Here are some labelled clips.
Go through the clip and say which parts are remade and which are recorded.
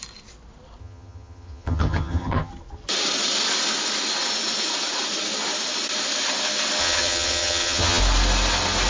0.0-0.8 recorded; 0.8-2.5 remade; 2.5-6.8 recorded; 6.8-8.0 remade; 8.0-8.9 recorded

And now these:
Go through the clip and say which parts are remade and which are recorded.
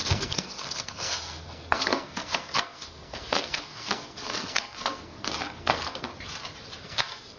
0.0-6.1 remade; 6.1-6.8 recorded; 6.8-7.4 remade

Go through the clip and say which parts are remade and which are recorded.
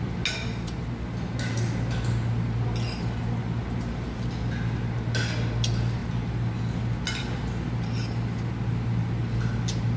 0.0-10.0 recorded